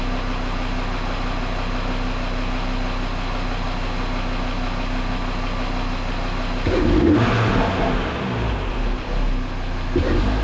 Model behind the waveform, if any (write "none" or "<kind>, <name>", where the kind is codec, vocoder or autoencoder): none